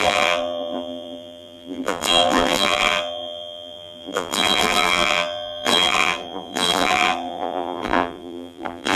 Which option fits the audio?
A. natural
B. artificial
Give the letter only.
B